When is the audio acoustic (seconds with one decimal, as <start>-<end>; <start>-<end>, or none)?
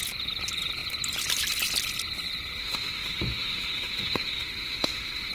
0.0-2.6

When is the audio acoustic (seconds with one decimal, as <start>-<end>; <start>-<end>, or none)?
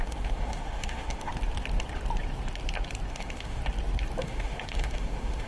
1.3-3.1; 3.6-4.2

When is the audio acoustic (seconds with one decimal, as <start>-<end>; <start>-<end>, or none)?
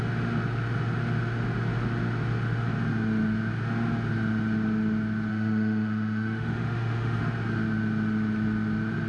0.0-5.3; 7.2-9.1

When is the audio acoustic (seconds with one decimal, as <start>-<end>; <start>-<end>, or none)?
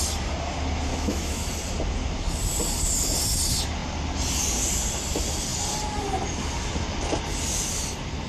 0.0-0.9; 1.5-8.3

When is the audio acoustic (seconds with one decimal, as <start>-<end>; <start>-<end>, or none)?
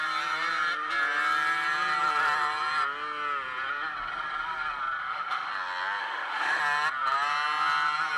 0.0-5.0; 5.5-6.0; 6.6-8.2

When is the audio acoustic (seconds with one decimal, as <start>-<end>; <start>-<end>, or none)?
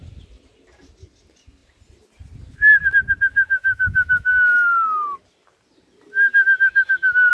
0.0-3.3; 4.3-6.3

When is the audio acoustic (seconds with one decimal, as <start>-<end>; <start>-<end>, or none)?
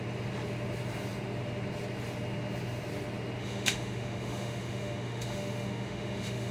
0.0-3.4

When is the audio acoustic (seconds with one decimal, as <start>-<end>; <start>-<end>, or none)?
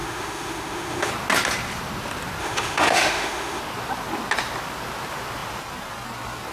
1.1-2.4; 3.6-6.5